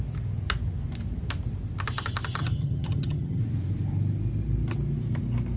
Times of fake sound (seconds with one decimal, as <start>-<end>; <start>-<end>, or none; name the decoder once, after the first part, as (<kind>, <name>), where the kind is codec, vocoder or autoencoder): 2.4-3.4 (vocoder, HiFi-GAN)